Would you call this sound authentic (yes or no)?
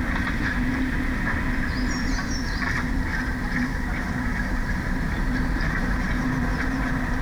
no